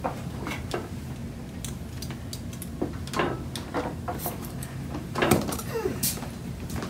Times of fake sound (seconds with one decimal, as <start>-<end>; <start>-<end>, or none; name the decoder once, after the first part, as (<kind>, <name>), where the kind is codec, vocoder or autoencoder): 0.0-1.2 (vocoder, BigVGAN v2); 3.7-6.9